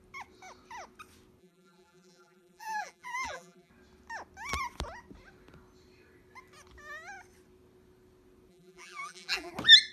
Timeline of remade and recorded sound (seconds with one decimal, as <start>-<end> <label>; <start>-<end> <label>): 0.0-1.4 recorded; 1.4-3.7 remade; 3.7-8.5 recorded; 8.5-9.5 remade; 9.5-9.9 recorded